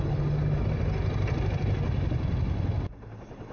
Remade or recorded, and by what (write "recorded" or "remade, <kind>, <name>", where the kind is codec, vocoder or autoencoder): recorded